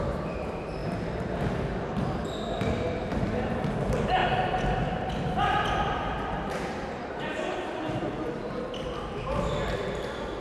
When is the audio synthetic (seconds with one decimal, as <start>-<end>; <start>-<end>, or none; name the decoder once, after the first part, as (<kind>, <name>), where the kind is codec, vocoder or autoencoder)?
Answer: 0.0-0.8 (vocoder, BigVGAN v2); 3.0-10.4